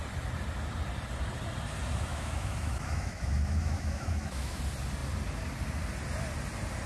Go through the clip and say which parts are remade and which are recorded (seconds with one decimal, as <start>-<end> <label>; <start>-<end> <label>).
0.0-2.1 recorded; 2.1-4.6 remade; 4.6-6.9 recorded